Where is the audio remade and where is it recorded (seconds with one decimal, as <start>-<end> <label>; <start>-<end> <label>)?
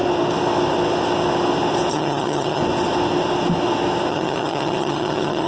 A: 0.0-1.9 recorded; 1.9-2.6 remade; 2.6-4.1 recorded; 4.1-5.5 remade